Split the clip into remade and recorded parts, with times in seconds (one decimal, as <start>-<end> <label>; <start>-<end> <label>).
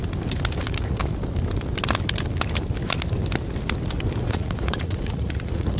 0.0-0.6 recorded; 0.6-1.0 remade; 1.0-4.2 recorded; 4.2-5.8 remade